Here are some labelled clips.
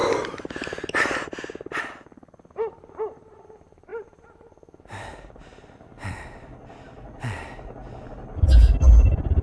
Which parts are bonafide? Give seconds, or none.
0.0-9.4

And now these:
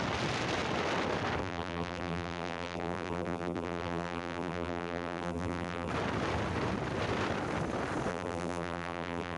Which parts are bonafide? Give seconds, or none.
0.0-1.4; 5.9-8.1

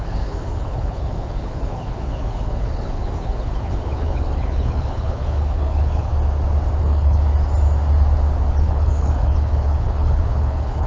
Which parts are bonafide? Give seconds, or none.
6.1-6.8; 7.3-8.5